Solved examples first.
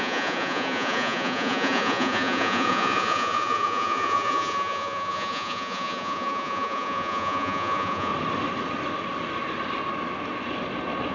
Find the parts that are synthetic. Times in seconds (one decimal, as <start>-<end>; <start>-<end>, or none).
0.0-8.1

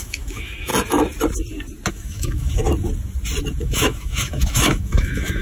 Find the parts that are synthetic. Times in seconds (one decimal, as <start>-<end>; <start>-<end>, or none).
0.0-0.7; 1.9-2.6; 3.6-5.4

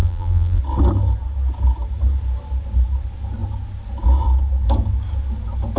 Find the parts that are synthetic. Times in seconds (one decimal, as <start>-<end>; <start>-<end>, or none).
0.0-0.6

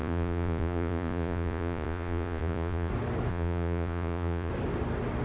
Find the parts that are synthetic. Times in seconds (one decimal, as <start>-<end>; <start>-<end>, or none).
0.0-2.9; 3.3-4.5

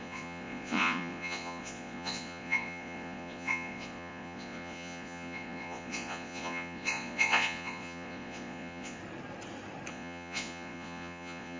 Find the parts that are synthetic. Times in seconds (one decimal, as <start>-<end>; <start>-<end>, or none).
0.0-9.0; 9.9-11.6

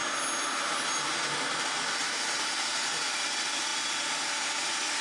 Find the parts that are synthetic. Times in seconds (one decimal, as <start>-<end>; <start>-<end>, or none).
none

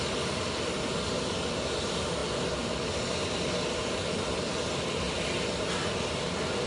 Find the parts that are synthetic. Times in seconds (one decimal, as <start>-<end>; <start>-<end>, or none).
none

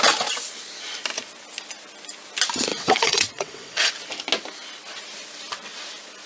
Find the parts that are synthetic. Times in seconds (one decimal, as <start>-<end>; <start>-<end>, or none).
2.7-3.9